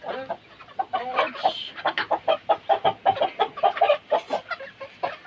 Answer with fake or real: real